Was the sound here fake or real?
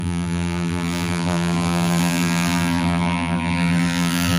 fake